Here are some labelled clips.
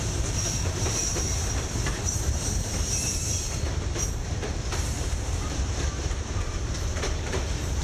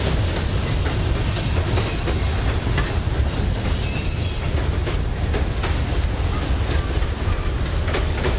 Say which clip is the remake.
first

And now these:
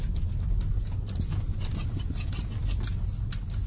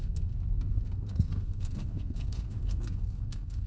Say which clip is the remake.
second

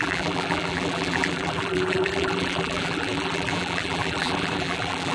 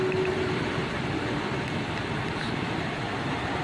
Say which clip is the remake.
first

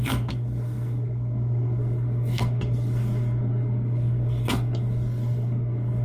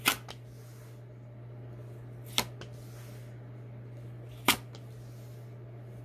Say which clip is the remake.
first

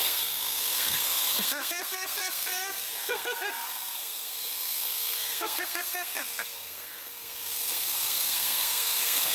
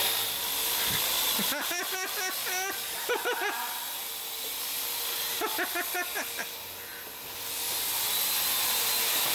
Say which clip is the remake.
first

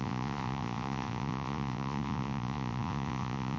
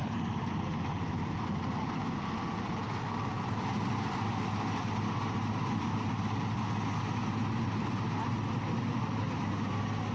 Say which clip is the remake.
first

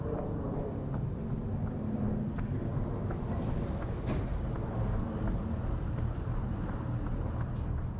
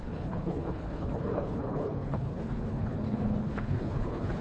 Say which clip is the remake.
second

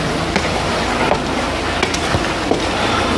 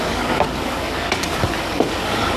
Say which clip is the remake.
second